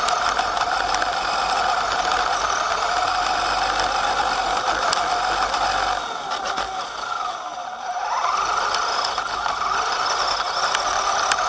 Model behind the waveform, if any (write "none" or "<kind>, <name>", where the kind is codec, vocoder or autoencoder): none